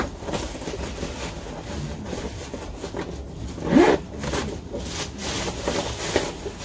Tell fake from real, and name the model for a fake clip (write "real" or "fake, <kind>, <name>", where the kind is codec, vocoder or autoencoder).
real